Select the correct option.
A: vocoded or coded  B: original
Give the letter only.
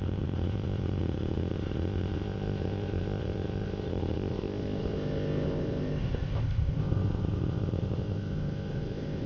A